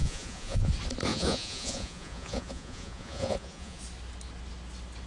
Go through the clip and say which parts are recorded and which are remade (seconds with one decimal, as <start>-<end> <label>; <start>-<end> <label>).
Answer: 0.0-0.7 remade; 0.7-1.1 recorded; 1.1-3.8 remade; 3.8-5.1 recorded